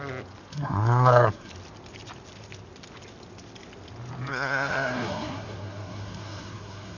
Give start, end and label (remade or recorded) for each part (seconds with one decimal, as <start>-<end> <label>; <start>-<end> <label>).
0.0-0.5 recorded; 0.5-1.5 remade; 1.5-4.3 recorded; 4.3-7.0 remade